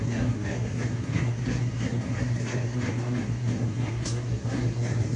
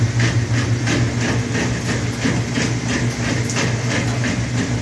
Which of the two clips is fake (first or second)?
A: first